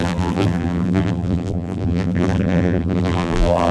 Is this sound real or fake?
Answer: fake